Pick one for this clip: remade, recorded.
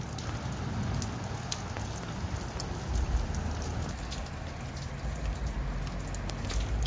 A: recorded